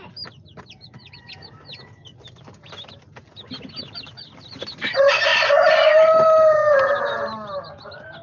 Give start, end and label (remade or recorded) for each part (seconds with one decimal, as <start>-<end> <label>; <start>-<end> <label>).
0.0-8.2 recorded